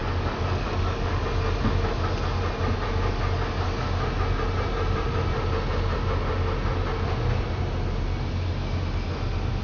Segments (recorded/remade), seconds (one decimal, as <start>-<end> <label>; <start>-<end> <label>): 0.0-1.2 remade; 1.2-9.6 recorded